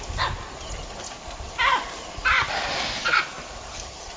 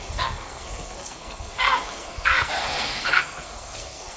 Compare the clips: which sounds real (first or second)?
first